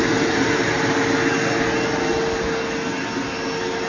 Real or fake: real